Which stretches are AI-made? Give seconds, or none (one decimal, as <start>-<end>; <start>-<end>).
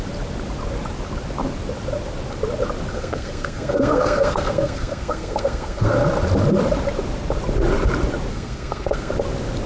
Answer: 2.9-5.9; 8.3-9.1